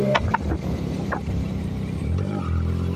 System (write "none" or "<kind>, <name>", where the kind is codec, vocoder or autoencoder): none